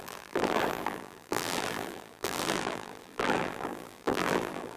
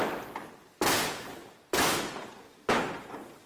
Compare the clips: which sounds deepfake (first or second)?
first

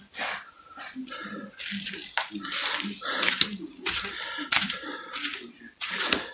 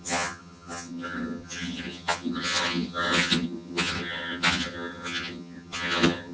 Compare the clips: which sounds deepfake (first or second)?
second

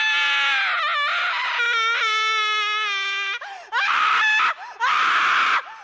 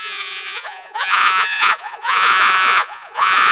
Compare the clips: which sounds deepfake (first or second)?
second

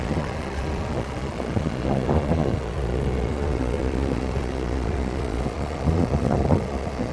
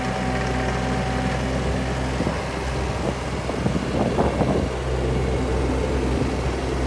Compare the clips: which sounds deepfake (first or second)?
first